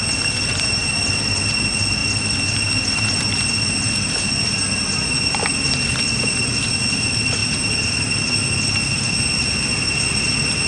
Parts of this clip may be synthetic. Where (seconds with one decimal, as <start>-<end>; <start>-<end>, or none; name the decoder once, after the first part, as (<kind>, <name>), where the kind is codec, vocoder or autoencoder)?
none